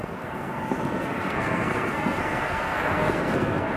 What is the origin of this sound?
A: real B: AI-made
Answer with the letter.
B